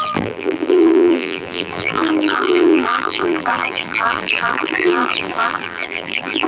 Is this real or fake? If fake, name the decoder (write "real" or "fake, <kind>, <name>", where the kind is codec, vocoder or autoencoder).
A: fake, vocoder, BigVGAN v2